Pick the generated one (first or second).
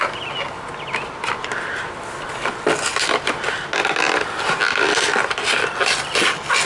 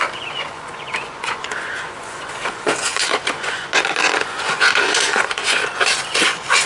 second